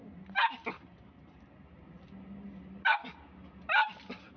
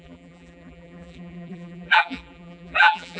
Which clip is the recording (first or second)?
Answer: first